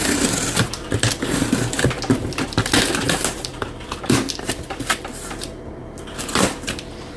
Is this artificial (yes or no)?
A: yes